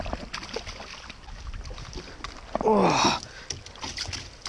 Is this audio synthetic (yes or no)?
no